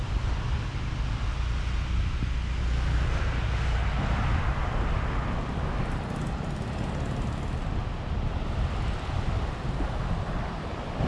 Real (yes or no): yes